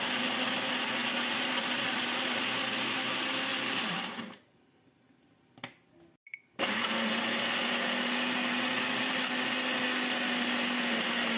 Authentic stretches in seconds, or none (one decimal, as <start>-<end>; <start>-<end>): 0.0-1.0; 2.4-3.5; 6.4-11.4

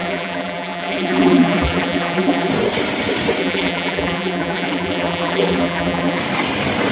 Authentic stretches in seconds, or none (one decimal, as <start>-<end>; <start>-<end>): 2.5-3.4; 6.2-6.9

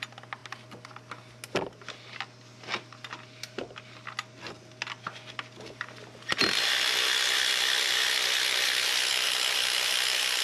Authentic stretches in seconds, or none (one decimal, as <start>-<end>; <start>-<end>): 0.0-6.4; 9.1-10.4

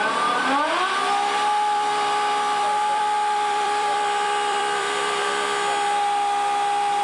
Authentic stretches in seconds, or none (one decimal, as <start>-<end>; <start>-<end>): 0.0-1.0; 5.2-7.0

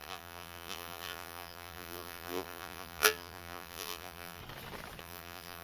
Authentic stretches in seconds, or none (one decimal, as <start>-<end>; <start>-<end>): 4.4-5.0

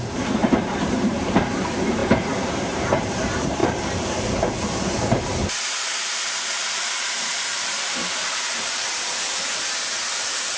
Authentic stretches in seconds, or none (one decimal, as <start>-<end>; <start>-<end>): 3.6-5.7